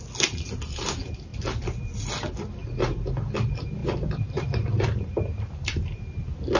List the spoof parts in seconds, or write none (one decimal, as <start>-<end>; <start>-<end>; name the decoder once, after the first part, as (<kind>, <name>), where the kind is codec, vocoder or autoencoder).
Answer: 2.6-3.3 (vocoder, BigVGAN v2); 3.8-6.0